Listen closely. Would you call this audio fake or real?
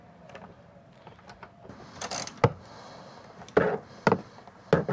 real